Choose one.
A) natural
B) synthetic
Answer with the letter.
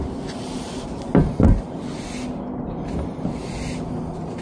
A